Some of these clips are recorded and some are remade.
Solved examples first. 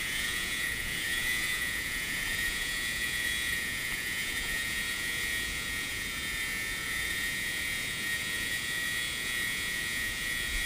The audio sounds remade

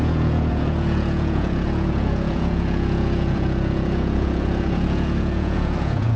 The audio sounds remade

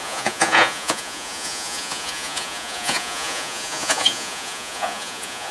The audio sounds remade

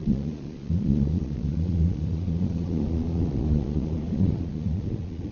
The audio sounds remade